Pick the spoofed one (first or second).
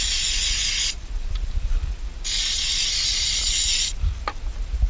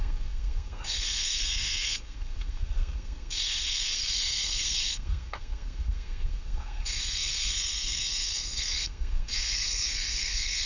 second